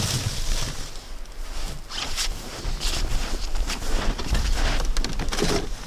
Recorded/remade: recorded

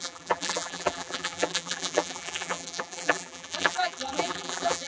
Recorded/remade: remade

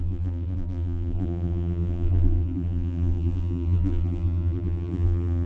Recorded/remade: remade